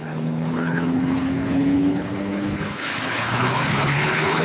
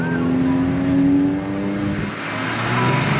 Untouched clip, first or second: second